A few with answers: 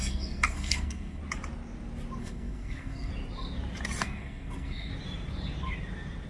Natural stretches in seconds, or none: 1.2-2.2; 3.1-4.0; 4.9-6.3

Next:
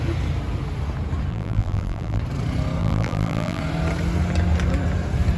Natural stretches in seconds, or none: 0.0-1.3; 2.2-2.8; 3.6-5.4

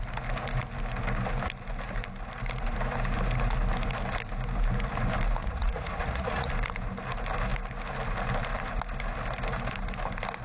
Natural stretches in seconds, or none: 0.0-5.4; 6.5-10.4